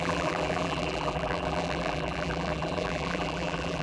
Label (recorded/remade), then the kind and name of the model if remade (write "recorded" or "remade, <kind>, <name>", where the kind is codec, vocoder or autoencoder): remade, vocoder, BigVGAN v2